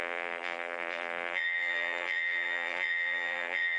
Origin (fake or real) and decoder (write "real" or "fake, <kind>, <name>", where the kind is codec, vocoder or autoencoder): fake, vocoder, BigVGAN v2